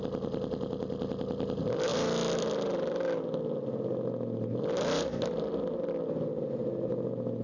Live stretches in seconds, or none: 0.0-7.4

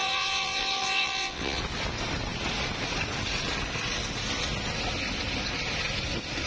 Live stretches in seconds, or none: 1.6-6.5

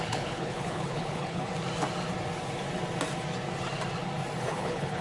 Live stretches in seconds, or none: 1.5-4.5